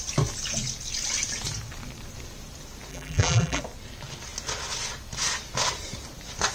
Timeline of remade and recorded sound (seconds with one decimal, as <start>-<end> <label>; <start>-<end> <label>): 0.0-2.9 recorded; 2.9-3.6 remade; 3.6-6.5 recorded